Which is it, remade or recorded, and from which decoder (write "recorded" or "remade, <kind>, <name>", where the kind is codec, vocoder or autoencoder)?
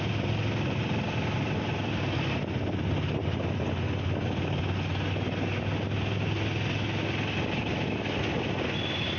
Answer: recorded